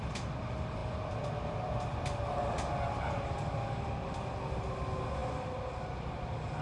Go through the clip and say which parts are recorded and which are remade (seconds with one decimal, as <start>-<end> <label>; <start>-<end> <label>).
0.0-6.6 recorded